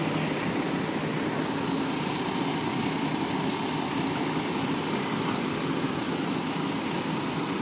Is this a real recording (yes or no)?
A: yes